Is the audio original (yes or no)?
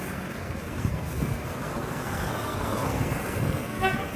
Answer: no